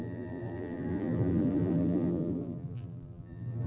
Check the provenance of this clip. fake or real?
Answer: fake